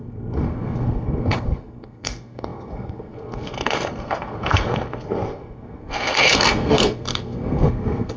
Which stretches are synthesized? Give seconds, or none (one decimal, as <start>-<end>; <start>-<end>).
0.0-8.2